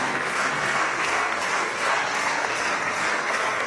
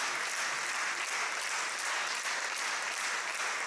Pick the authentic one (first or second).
second